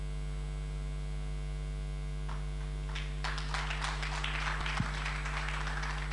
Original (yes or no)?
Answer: yes